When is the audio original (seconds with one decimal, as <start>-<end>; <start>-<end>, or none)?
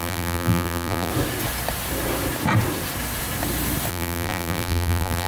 1.1-3.9